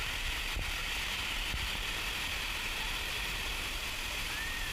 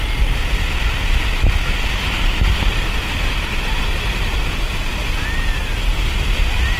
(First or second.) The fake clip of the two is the first